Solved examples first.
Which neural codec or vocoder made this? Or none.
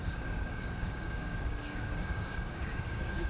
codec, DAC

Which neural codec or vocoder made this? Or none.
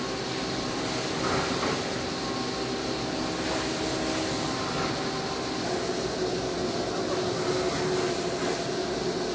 none